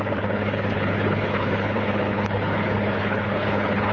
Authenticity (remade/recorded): remade